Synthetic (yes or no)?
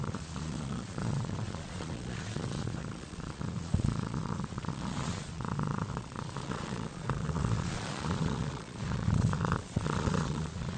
yes